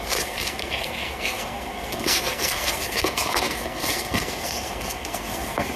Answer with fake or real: fake